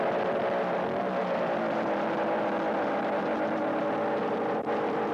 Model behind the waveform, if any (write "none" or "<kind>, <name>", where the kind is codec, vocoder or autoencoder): none